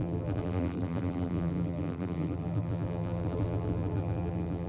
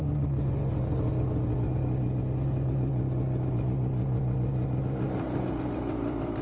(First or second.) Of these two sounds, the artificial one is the first